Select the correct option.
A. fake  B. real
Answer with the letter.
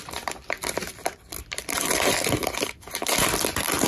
A